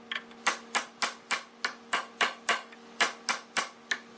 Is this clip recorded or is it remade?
recorded